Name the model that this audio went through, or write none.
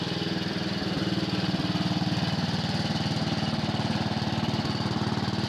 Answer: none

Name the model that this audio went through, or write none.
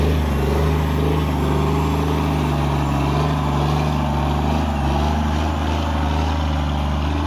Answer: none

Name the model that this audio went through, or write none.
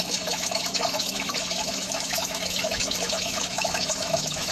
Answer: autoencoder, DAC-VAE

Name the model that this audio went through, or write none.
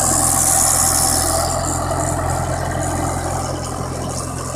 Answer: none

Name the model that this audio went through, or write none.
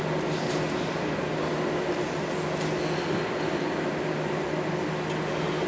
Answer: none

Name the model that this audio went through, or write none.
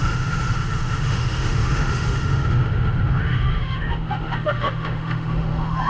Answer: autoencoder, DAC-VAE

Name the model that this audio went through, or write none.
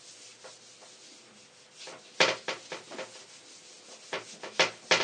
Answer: none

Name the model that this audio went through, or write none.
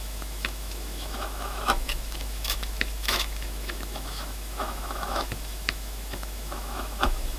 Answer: autoencoder, DAC-VAE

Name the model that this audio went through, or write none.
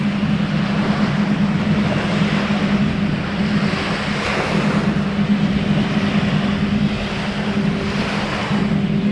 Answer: none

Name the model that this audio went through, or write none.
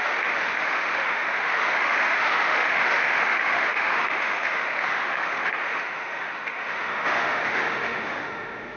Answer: autoencoder, DAC-VAE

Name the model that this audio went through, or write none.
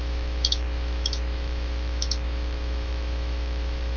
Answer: autoencoder, DAC-VAE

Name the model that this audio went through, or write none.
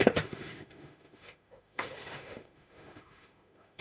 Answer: autoencoder, DAC-VAE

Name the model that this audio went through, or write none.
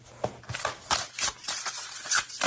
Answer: none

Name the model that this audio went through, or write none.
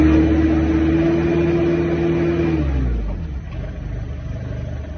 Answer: none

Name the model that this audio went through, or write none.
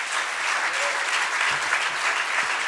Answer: none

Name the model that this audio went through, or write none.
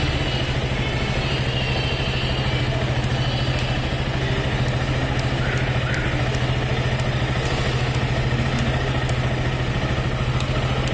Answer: none